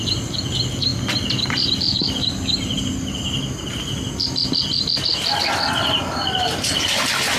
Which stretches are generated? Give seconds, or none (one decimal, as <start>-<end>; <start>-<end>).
none